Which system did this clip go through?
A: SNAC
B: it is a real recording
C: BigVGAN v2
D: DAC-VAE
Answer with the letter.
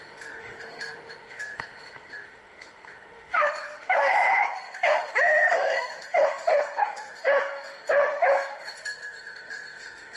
D